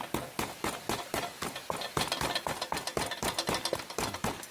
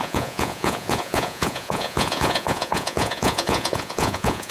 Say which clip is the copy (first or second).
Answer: second